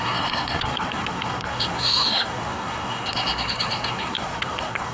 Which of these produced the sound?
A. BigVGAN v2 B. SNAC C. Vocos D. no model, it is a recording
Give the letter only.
B